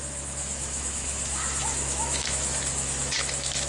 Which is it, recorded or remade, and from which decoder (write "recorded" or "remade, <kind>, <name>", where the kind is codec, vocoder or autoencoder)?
remade, autoencoder, DAC-VAE